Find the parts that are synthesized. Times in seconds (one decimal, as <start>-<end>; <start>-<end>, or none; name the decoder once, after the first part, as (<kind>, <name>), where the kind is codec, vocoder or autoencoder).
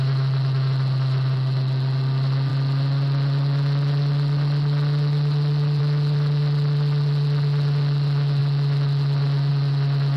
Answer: none